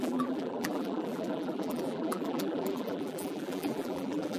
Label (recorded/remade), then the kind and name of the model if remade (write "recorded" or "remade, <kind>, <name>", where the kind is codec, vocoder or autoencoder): remade, vocoder, BigVGAN v2